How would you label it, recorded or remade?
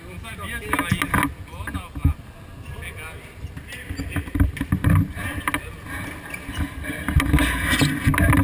recorded